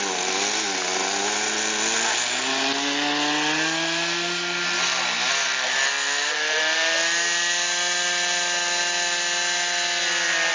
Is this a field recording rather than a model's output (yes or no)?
yes